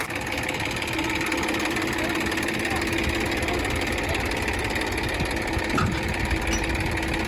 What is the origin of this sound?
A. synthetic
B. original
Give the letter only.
B